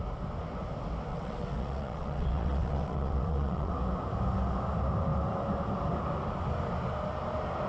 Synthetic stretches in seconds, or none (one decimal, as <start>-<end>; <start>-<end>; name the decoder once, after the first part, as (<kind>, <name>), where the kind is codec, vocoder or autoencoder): 1.1-3.7 (vocoder, WaveNeXt)